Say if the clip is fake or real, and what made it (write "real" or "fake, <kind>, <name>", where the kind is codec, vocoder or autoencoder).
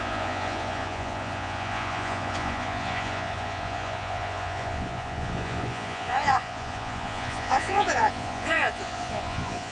fake, vocoder, Vocos